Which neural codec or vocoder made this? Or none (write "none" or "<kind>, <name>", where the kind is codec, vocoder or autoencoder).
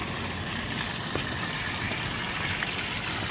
none